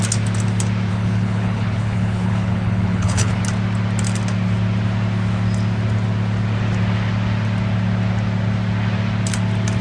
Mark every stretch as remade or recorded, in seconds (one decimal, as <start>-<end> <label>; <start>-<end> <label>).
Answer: 0.0-0.9 recorded; 0.9-3.4 remade; 3.4-9.8 recorded